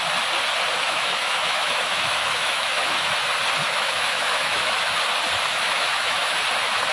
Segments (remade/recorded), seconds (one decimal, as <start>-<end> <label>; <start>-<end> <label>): 0.0-0.8 recorded; 0.8-3.1 remade; 3.1-3.6 recorded; 3.6-5.0 remade; 5.0-5.5 recorded; 5.5-6.4 remade; 6.4-6.9 recorded